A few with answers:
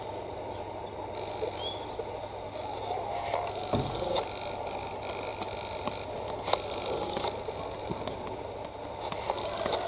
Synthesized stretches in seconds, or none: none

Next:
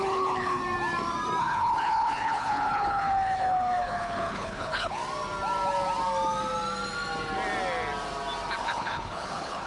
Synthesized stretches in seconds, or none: 0.0-0.6 (codec, HILCodec); 1.4-5.0; 8.6-9.7

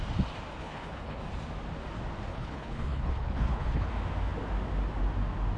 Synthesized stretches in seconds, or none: 0.6-1.2 (codec, HILCodec); 2.3-3.9

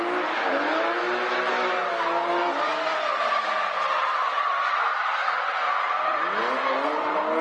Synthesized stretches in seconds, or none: none

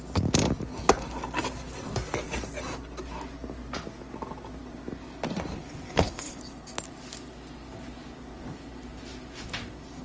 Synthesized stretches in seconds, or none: 5.5-6.4 (codec, HILCodec)